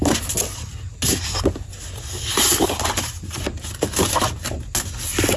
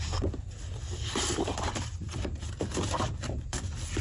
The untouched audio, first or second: first